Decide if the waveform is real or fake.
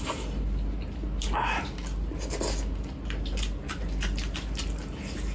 real